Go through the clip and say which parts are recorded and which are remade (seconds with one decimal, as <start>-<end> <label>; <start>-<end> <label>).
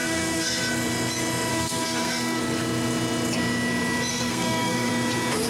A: 0.0-0.6 remade; 0.6-1.5 recorded; 1.5-2.4 remade; 2.4-4.1 recorded; 4.1-4.9 remade; 4.9-5.5 recorded